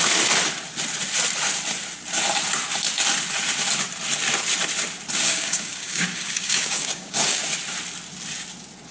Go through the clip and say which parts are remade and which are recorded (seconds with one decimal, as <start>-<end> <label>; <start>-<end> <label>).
0.0-5.3 recorded; 5.3-7.4 remade; 7.4-8.9 recorded